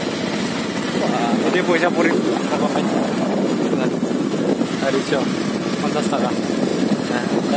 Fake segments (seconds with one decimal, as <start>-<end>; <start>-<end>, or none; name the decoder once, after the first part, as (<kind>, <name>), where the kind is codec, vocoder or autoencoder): none

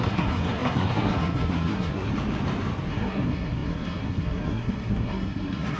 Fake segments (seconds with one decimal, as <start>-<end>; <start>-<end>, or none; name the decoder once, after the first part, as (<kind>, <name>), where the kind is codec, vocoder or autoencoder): 0.0-2.1 (codec, SNAC); 2.9-5.8

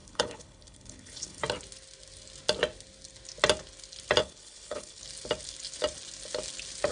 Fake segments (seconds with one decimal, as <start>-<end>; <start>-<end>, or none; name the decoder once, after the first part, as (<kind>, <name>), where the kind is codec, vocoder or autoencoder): 0.0-1.4 (codec, HILCodec); 4.2-5.0